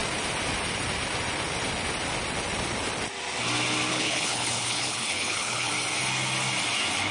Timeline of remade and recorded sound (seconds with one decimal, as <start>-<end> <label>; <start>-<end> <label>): 0.0-3.9 recorded; 3.9-5.7 remade; 5.7-7.1 recorded